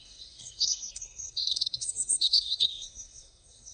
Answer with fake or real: fake